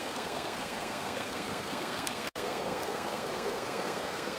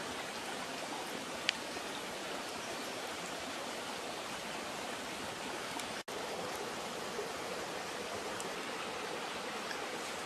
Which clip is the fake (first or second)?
first